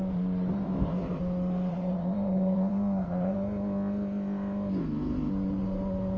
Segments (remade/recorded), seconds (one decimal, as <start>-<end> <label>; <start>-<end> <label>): 0.0-0.5 recorded; 0.5-1.2 remade; 1.2-1.7 recorded; 1.7-5.3 remade; 5.3-6.2 recorded